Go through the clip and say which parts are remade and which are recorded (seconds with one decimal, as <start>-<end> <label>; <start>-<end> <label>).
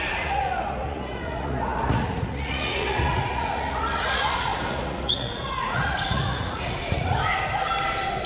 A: 0.0-7.2 remade; 7.2-8.3 recorded